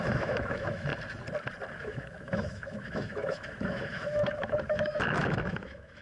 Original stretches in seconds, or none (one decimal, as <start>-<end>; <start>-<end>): 0.9-1.8